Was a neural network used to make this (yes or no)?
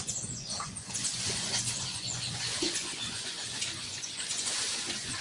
yes